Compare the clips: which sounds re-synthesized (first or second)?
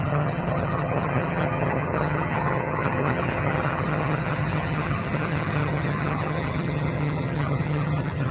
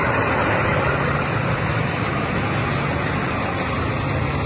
first